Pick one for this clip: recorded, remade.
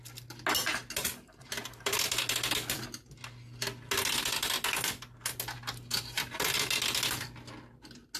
recorded